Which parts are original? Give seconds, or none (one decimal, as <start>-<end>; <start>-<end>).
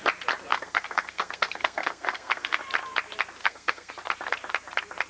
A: 0.0-0.5; 2.6-3.4; 3.9-5.1